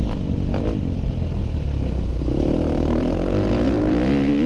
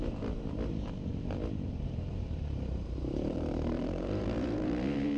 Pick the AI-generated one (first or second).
second